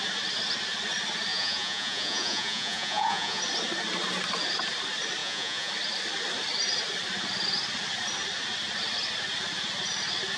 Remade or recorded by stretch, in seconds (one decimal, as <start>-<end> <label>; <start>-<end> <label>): 0.0-1.3 recorded; 1.3-3.4 remade; 3.4-5.2 recorded; 5.2-5.7 remade; 5.7-10.4 recorded